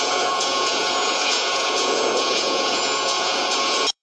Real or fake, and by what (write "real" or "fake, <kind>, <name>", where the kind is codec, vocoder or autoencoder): fake, vocoder, Vocos